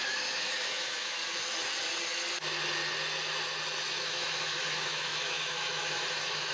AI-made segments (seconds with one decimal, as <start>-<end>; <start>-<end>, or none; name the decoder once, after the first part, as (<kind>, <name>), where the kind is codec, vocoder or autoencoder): 0.0-1.2 (autoencoder, DAC-VAE); 3.9-6.5